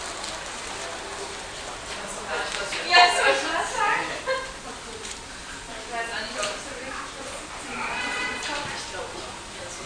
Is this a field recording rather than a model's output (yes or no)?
yes